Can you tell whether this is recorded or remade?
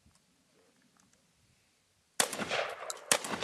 recorded